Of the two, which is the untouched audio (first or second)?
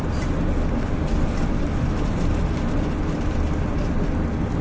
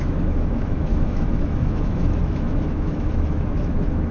first